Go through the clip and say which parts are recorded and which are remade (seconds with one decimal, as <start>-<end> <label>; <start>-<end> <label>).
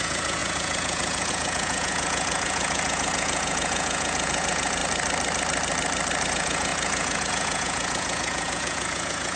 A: 0.0-4.8 remade; 4.8-6.3 recorded; 6.3-9.4 remade